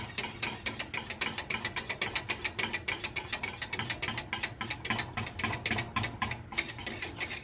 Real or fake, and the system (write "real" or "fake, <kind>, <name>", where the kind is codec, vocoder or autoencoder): real